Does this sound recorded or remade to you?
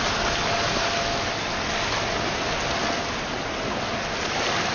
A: recorded